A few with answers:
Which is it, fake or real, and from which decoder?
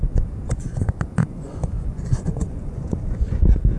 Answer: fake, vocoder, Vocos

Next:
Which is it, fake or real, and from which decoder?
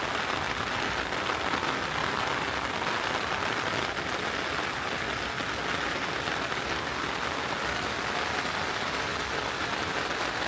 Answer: real